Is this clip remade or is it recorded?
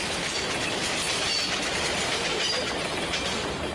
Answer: recorded